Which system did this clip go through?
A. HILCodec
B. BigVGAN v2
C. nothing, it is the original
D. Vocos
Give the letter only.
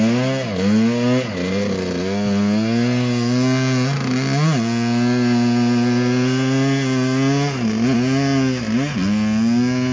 C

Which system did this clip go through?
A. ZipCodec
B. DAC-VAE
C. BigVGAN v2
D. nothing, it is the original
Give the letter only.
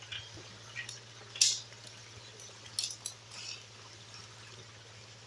D